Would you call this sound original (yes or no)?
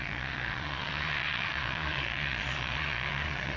no